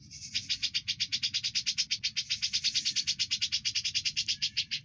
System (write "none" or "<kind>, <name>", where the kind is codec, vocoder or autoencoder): none